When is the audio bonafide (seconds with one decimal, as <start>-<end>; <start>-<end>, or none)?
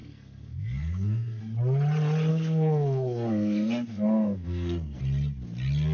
1.4-2.3; 5.0-5.9